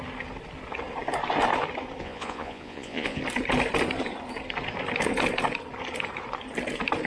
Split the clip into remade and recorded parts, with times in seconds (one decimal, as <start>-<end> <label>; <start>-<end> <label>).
0.0-2.0 recorded; 2.0-3.2 remade; 3.2-7.1 recorded